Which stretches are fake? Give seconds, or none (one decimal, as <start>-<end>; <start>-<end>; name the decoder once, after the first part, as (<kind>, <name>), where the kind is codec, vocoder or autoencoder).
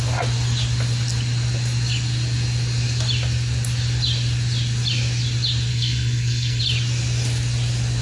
5.7-6.6 (codec, SNAC)